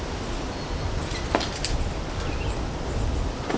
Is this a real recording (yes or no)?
yes